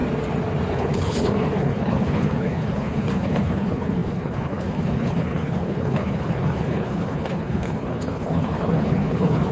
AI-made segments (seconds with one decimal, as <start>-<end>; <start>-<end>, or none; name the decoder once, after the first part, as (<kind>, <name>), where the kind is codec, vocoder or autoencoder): 0.7-9.5 (codec, HILCodec)